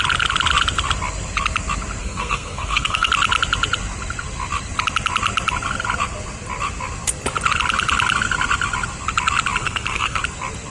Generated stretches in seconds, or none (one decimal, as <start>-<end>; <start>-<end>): 2.0-3.1; 9.6-10.2